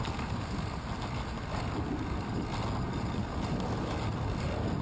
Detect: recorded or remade recorded